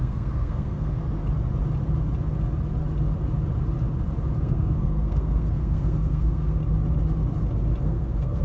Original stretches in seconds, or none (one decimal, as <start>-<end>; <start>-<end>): 1.0-4.4; 6.6-7.8